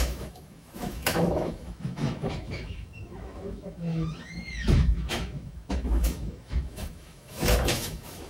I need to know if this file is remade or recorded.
remade